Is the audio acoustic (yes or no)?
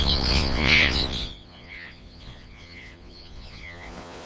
no